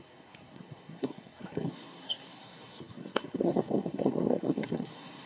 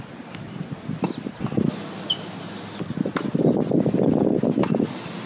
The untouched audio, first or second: second